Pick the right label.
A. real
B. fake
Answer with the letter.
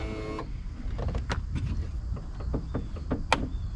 A